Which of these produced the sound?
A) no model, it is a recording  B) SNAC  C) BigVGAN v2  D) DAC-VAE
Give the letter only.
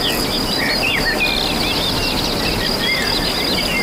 A